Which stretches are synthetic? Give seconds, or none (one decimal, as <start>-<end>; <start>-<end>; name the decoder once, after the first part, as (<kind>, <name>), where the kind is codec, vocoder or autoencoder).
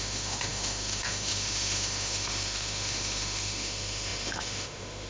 0.0-5.1 (autoencoder, DAC-VAE)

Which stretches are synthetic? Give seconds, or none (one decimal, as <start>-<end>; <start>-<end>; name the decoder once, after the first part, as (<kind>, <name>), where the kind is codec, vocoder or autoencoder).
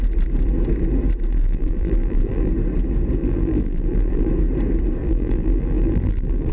1.3-2.5 (vocoder, BigVGAN v2); 3.2-4.3; 5.0-6.5